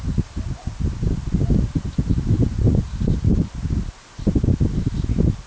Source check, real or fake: real